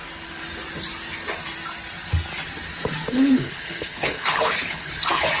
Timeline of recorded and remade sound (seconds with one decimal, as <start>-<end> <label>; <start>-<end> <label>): 0.0-3.1 recorded; 3.1-5.0 remade; 5.0-5.4 recorded